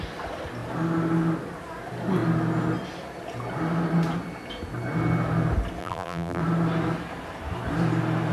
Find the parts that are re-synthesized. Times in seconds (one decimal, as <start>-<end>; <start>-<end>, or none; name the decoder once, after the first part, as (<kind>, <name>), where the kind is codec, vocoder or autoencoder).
5.8-6.4 (vocoder, BigVGAN v2)